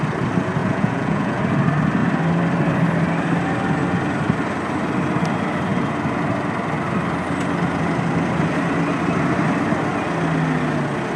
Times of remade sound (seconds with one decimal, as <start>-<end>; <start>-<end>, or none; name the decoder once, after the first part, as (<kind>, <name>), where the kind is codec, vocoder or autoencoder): 0.6-1.4 (vocoder, Vocos)